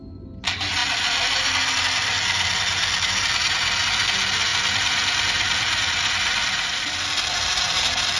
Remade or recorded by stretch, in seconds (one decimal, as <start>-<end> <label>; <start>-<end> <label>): 0.0-8.2 recorded